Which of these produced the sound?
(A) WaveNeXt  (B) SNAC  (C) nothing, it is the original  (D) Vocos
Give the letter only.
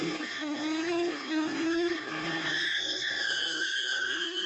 B